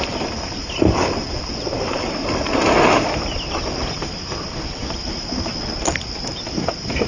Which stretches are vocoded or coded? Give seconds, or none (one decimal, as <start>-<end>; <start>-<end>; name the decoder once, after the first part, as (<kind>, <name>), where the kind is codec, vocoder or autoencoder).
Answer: none